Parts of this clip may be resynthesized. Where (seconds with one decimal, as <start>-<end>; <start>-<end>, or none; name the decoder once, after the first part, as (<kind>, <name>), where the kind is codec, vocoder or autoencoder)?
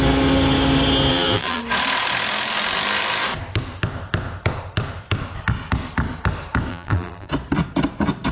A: 1.1-1.6 (vocoder, BigVGAN v2); 6.7-7.3